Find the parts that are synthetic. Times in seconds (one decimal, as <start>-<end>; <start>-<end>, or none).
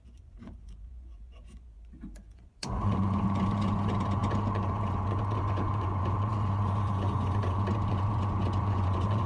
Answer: 0.0-9.3